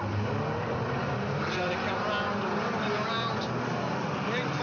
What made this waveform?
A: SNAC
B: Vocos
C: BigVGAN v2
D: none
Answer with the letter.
D